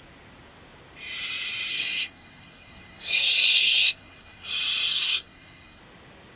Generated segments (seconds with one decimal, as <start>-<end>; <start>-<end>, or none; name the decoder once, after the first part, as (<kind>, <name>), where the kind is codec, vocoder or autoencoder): 1.7-4.5 (codec, SNAC); 4.9-5.8